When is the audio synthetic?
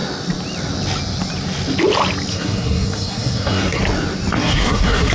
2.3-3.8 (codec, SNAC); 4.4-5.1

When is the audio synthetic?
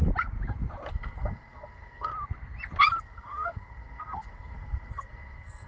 0.9-2.1 (codec, SNAC); 3.0-5.7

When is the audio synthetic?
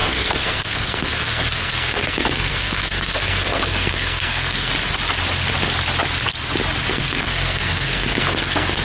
0.0-4.7 (codec, SNAC); 6.9-8.8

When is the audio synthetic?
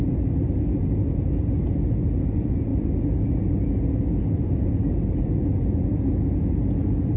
none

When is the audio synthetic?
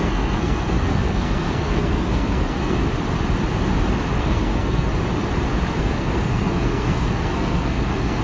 0.0-2.8 (codec, SNAC); 4.2-4.9; 5.8-8.2